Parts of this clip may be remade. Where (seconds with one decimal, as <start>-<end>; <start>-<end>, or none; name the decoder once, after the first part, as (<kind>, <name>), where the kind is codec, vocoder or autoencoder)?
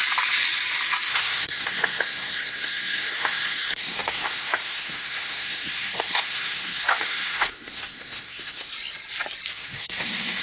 1.1-8.7 (codec, SNAC); 9.5-10.4